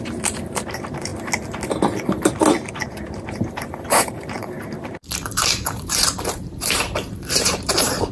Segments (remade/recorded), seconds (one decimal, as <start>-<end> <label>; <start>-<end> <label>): 0.0-1.1 remade; 1.1-2.7 recorded; 2.7-8.1 remade